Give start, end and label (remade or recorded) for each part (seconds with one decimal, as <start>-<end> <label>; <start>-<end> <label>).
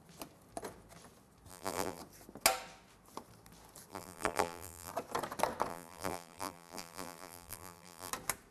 0.0-1.5 recorded; 1.5-2.0 remade; 2.0-3.9 recorded; 3.9-4.9 remade; 4.9-5.7 recorded; 5.7-8.1 remade; 8.1-8.5 recorded